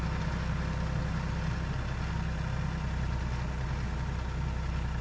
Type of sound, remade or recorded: recorded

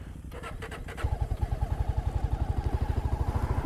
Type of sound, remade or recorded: recorded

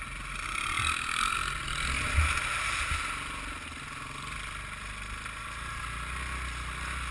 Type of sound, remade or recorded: recorded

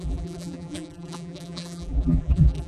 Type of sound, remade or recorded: remade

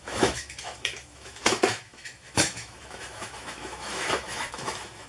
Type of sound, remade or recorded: remade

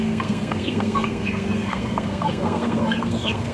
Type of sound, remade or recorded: remade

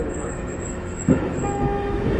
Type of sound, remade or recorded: remade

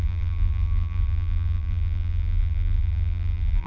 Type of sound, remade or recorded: remade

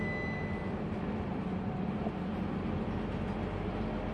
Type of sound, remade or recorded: recorded